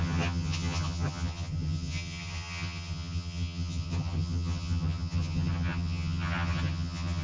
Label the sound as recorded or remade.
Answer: remade